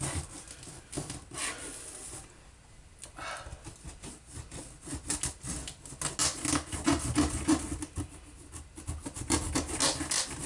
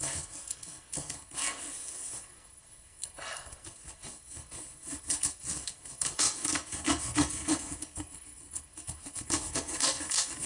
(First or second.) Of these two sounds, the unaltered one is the first